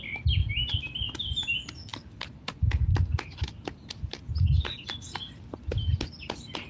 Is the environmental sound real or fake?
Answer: real